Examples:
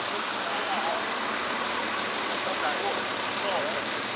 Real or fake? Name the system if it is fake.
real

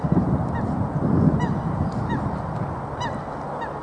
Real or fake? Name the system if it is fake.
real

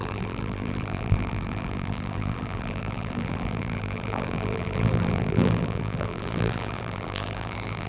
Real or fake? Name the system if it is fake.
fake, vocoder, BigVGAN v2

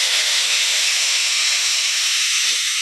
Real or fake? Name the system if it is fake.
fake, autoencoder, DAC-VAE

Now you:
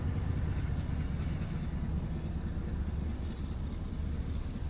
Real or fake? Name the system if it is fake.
real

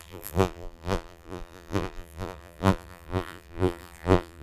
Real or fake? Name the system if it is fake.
fake, vocoder, BigVGAN v2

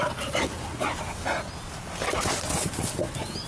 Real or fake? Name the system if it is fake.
real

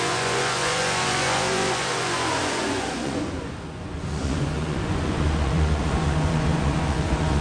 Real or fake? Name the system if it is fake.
fake, vocoder, Vocos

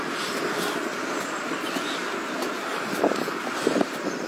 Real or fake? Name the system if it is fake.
real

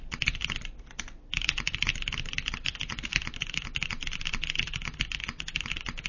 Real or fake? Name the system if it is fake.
real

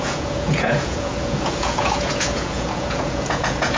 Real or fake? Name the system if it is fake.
fake, vocoder, Vocos